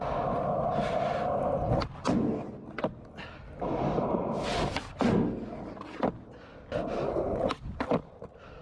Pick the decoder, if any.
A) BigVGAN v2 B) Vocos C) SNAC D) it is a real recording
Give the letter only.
D